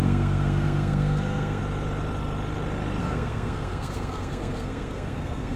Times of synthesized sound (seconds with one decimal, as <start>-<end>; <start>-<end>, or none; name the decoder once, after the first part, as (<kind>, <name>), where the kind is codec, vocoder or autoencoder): 0.0-1.6 (codec, SNAC); 3.0-5.6

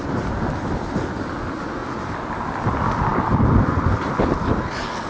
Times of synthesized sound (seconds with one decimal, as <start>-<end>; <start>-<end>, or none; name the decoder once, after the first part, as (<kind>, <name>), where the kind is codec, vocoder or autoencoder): none

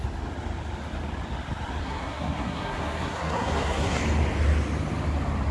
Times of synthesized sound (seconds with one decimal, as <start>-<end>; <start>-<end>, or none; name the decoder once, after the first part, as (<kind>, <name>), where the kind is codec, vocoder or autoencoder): 1.8-4.0 (codec, SNAC)

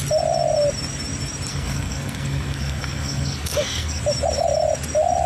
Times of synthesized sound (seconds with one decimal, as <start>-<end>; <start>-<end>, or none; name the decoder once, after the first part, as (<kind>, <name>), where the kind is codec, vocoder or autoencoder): 1.5-4.0 (codec, SNAC)

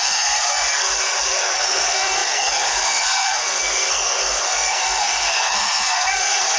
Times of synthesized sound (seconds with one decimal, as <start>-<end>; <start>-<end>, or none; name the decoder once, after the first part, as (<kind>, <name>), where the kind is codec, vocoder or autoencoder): 0.0-6.6 (codec, SNAC)

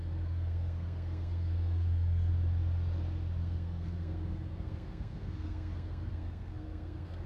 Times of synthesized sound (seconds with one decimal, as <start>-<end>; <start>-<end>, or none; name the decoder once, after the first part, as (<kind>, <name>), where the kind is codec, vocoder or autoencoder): 0.0-2.3 (codec, SNAC); 3.4-7.3

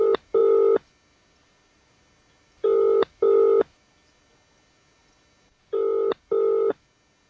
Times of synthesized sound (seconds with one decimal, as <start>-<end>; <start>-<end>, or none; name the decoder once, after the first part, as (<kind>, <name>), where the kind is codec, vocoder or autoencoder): none

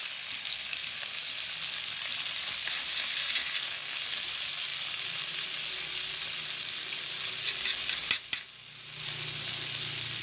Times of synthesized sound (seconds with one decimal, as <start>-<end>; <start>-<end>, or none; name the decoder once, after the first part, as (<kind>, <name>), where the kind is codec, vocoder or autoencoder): 3.4-4.0 (codec, SNAC)